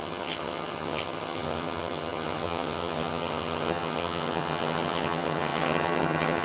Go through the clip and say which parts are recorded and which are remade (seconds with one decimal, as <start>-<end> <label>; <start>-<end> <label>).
0.0-6.4 remade